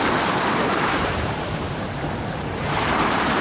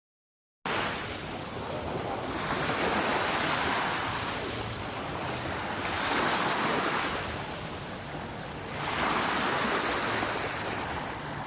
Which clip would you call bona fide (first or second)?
second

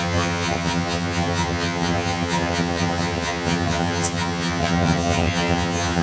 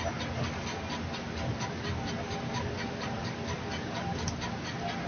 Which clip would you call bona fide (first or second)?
second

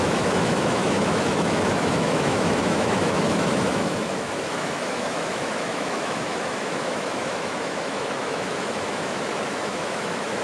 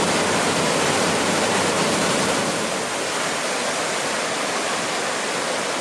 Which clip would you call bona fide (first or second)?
second